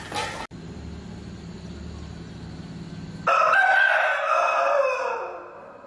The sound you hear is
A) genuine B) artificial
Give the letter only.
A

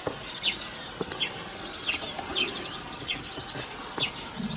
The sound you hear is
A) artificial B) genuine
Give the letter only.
B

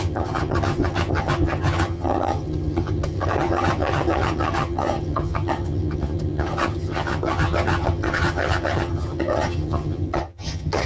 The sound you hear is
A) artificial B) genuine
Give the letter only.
A